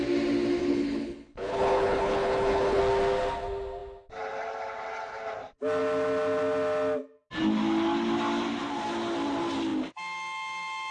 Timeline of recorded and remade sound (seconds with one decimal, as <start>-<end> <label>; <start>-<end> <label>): 0.0-0.6 recorded; 0.6-2.8 remade; 2.8-10.9 recorded